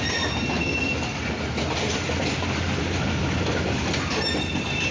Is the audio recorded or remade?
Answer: recorded